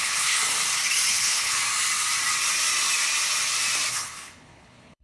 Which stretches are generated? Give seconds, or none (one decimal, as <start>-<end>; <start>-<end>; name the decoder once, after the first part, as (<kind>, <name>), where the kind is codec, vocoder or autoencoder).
0.0-0.4 (codec, HILCodec); 1.1-1.6; 3.9-5.0